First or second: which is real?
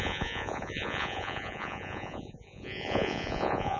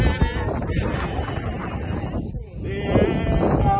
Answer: second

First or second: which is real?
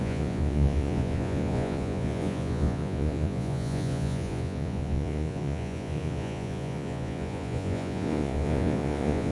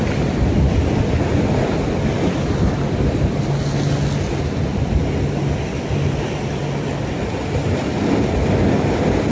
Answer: second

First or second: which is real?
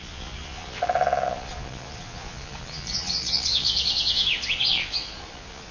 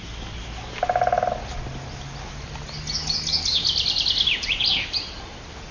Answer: second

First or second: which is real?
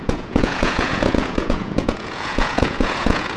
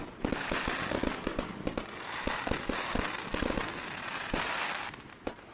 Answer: second